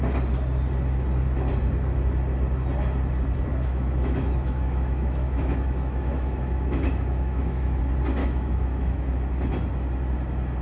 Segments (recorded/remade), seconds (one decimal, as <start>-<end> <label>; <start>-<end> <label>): 0.0-3.5 recorded; 3.5-7.8 remade; 7.8-8.2 recorded; 8.2-9.1 remade; 9.1-10.6 recorded